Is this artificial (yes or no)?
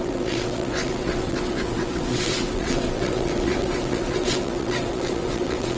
yes